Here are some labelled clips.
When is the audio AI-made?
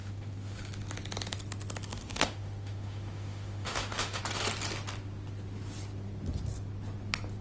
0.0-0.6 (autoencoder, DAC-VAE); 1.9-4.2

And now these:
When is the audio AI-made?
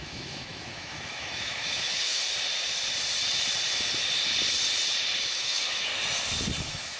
0.0-2.2 (autoencoder, DAC-VAE); 5.2-5.9; 6.6-7.0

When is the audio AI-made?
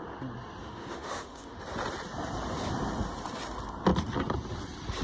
0.6-1.6 (autoencoder, DAC-VAE)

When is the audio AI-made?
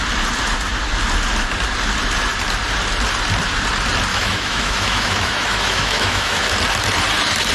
4.1-6.4 (autoencoder, DAC-VAE)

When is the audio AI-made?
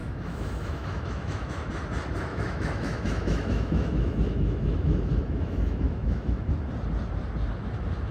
0.0-1.7 (autoencoder, DAC-VAE); 2.3-6.5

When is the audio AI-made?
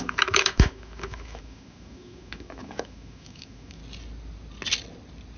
0.0-3.8 (autoencoder, DAC-VAE)